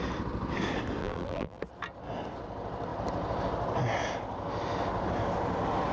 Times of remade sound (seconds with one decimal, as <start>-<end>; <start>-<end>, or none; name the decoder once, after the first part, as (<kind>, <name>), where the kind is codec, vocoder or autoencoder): 1.0-1.6 (vocoder, BigVGAN v2)